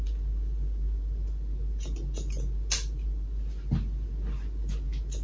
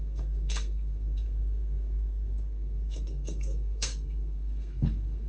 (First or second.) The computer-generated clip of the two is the second